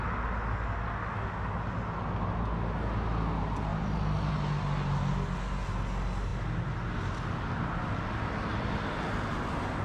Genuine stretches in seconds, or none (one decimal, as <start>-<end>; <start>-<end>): 0.0-9.8